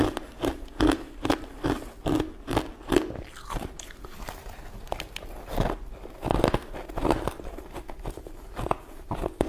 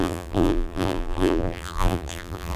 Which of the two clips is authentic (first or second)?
first